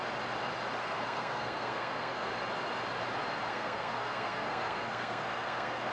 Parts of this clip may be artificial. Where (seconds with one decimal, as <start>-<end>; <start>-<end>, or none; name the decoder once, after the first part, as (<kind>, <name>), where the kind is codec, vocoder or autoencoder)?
0.8-2.3 (codec, SNAC); 3.5-5.9